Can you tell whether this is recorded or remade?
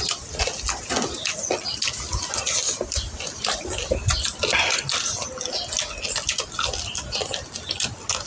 recorded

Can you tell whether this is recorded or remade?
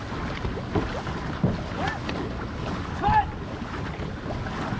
recorded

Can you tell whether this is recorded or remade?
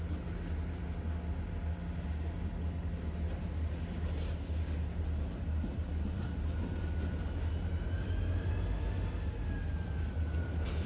recorded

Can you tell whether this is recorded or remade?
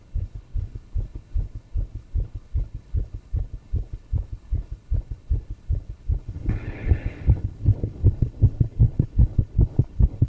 remade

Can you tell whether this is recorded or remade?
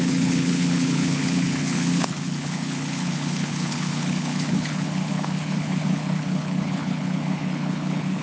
remade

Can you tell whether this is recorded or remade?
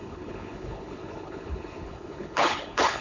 remade